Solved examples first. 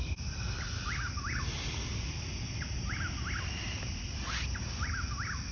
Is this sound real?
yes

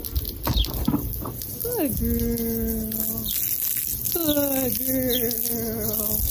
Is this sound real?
yes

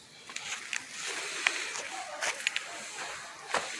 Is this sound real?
yes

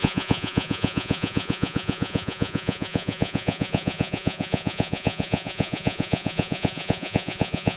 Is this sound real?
no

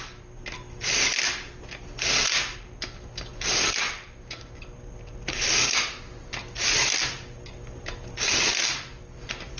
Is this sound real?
yes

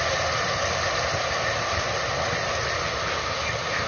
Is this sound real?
yes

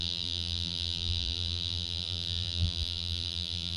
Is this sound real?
no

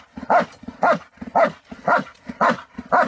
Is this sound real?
yes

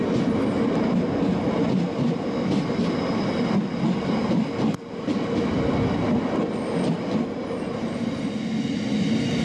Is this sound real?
yes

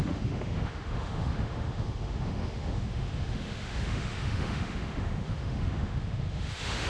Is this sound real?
no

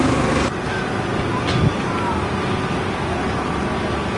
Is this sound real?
yes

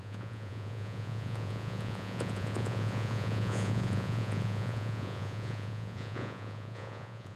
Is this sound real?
no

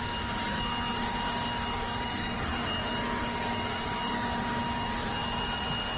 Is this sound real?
yes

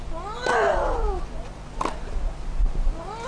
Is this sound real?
yes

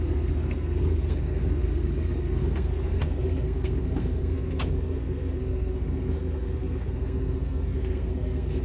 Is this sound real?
no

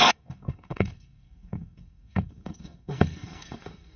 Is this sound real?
no